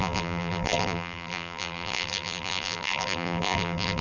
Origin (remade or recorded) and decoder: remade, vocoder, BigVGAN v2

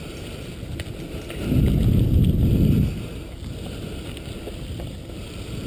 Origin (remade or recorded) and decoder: recorded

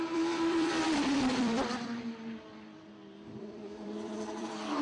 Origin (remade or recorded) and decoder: remade, vocoder, BigVGAN v2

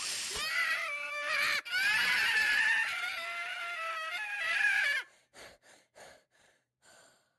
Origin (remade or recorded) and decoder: remade, vocoder, BigVGAN v2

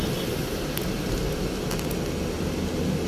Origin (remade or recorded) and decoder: recorded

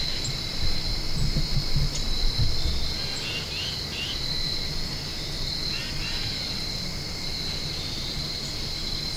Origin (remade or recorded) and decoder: recorded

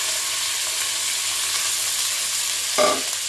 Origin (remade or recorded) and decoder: recorded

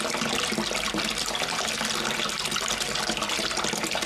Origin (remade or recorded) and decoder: recorded